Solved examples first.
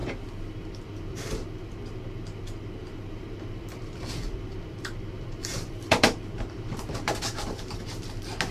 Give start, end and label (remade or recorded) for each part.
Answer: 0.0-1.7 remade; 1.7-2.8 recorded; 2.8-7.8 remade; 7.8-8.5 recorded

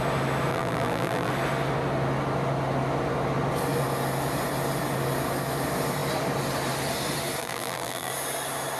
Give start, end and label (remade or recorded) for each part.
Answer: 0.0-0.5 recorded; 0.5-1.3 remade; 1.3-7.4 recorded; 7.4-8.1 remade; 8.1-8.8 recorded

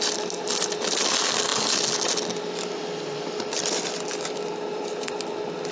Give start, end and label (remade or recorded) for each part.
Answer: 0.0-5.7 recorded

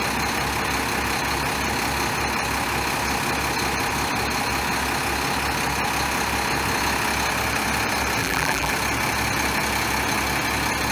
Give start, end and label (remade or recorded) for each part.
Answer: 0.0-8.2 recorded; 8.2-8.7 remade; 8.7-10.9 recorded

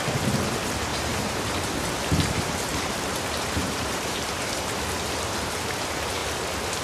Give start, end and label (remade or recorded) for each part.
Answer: 0.0-0.9 recorded; 0.9-1.4 remade; 1.4-2.7 recorded; 2.7-4.4 remade; 4.4-6.8 recorded

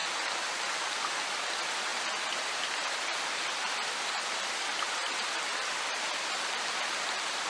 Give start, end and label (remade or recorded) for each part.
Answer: 0.0-1.9 recorded; 1.9-5.8 remade; 5.8-7.5 recorded